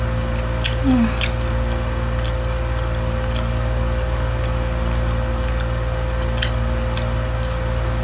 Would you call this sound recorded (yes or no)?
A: yes